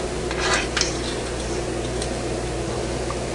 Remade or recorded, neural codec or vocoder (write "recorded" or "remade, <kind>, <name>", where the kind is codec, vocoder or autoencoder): recorded